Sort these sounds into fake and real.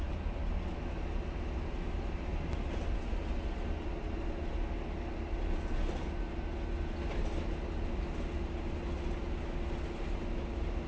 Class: real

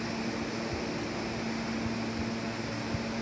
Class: real